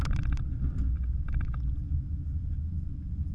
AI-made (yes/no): no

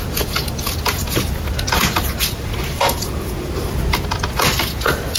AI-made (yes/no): no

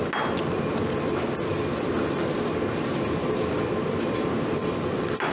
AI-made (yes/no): no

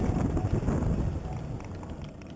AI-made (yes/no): no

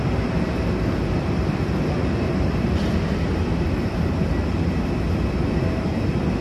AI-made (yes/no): no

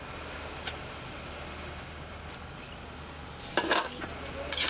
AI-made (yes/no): no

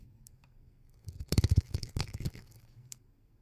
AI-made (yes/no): yes